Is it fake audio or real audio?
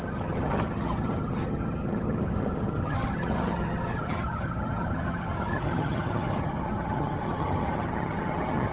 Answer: fake